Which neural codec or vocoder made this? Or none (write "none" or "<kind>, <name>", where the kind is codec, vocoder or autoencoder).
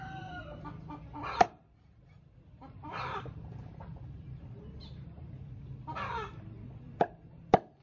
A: none